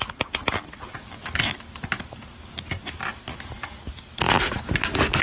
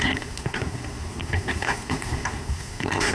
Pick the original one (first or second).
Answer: first